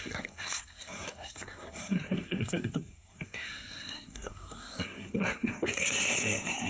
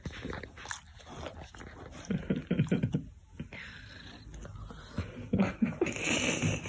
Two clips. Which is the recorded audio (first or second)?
second